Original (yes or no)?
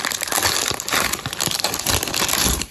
yes